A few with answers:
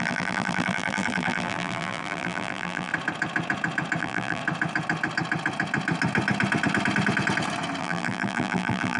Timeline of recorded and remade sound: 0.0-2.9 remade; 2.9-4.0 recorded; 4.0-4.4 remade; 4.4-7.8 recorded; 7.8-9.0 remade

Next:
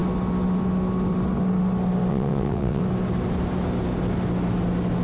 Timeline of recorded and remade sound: 0.0-2.1 recorded; 2.1-2.8 remade; 2.8-5.0 recorded